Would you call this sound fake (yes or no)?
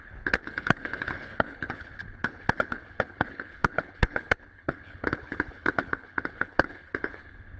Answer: yes